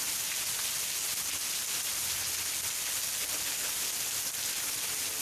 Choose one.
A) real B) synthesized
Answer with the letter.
A